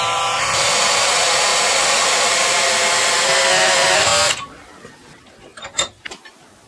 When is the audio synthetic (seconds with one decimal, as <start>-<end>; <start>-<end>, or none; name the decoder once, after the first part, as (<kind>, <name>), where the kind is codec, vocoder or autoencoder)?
1.5-3.4 (vocoder, BigVGAN v2); 5.5-6.2